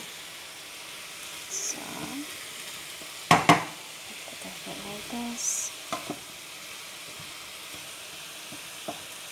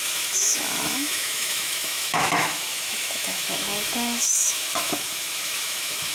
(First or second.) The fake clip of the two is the second